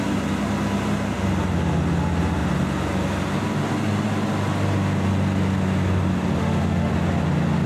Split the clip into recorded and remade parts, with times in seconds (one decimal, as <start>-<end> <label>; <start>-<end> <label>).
0.0-6.4 recorded; 6.4-6.9 remade; 6.9-7.7 recorded